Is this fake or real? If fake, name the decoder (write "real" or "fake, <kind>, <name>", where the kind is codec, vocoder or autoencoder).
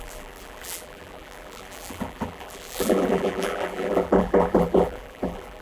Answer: fake, vocoder, BigVGAN v2